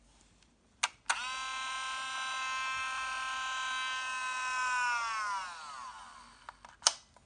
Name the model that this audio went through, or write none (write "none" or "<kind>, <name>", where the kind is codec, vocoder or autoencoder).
none